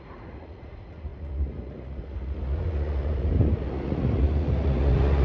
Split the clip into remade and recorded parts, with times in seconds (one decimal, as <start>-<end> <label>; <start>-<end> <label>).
0.0-5.2 remade